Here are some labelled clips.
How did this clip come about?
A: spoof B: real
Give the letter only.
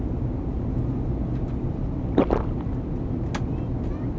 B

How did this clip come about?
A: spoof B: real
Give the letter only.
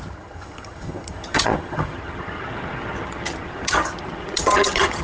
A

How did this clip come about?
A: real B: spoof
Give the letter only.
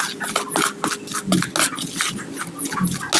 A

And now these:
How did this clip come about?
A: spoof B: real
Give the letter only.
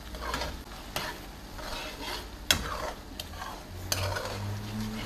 B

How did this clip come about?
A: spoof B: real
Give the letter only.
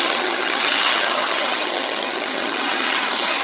A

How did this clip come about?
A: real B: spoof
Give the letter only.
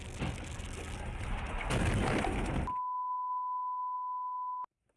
A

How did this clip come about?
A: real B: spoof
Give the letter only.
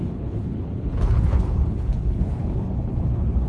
B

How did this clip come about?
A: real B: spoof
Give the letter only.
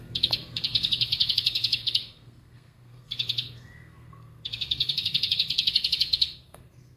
B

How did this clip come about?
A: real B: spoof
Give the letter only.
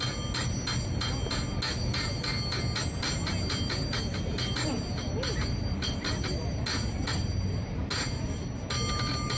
A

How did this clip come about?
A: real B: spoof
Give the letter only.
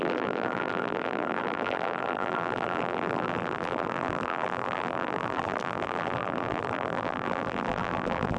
B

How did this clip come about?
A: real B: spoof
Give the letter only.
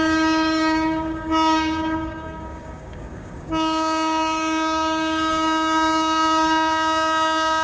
B